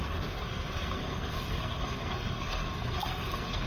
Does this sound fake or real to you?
fake